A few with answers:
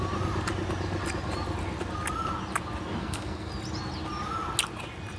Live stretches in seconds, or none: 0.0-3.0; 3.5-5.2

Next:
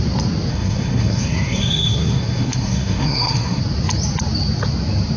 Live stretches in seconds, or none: 0.0-0.5; 3.6-5.2